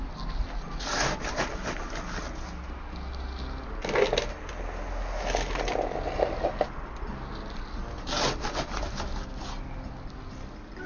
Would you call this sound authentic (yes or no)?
yes